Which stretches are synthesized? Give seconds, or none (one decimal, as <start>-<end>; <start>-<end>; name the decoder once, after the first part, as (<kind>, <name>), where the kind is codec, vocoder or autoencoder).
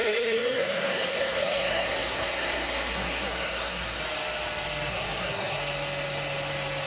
0.0-4.0 (codec, SNAC); 4.9-5.6